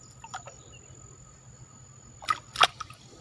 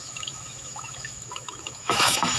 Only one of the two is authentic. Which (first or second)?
first